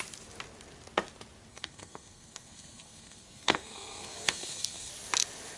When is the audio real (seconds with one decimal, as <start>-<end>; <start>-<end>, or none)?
0.0-1.5; 4.9-5.6